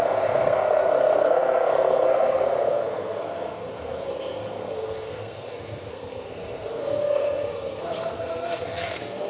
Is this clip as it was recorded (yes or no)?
no